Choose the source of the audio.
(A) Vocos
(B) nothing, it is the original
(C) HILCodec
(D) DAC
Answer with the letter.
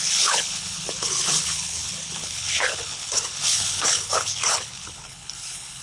C